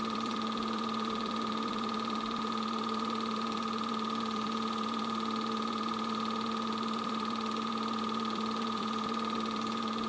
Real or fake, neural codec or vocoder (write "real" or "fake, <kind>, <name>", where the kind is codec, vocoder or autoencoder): fake, vocoder, BigVGAN v2